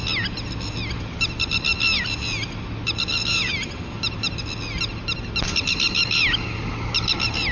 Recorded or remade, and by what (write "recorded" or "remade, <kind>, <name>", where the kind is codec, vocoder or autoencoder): recorded